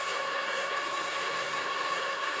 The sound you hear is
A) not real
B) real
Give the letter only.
A